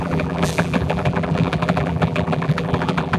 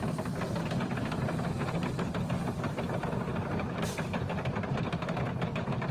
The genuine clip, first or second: second